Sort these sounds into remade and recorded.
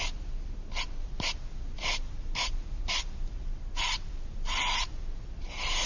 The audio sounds recorded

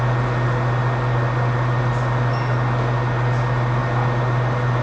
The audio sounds recorded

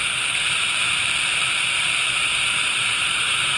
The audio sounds remade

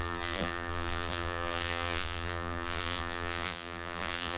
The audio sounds remade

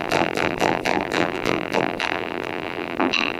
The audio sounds remade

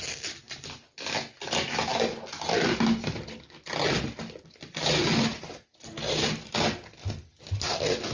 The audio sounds recorded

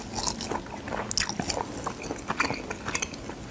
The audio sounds recorded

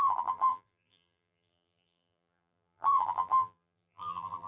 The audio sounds remade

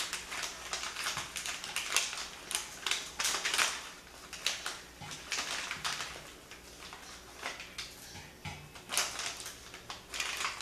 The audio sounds recorded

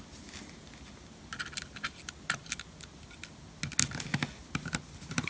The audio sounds recorded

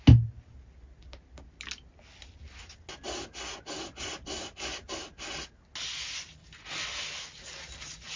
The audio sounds recorded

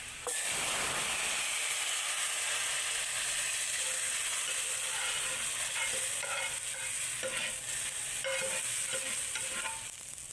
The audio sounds recorded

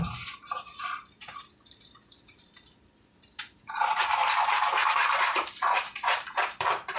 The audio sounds remade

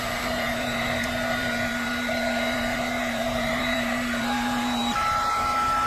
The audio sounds remade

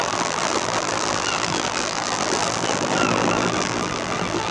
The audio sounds remade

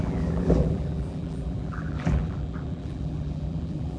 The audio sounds remade